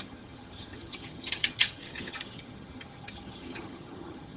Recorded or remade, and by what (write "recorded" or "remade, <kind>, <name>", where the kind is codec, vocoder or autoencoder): remade, vocoder, HiFi-GAN